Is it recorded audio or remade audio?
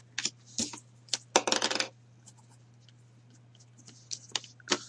recorded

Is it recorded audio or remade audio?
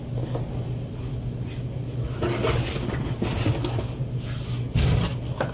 recorded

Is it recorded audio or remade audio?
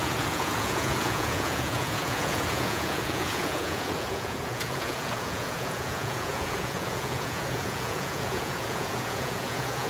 remade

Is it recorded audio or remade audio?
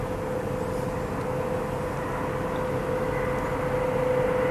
recorded